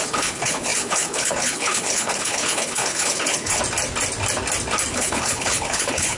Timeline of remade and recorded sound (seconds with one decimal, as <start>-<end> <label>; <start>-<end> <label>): 0.0-3.6 remade; 3.6-4.9 recorded; 4.9-6.2 remade